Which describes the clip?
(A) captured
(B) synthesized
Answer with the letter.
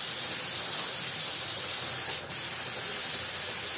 A